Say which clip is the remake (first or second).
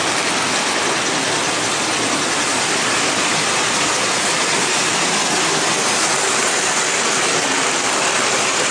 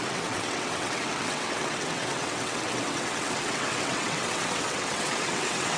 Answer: second